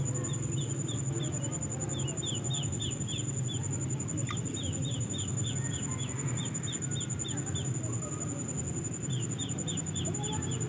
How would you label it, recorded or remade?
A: recorded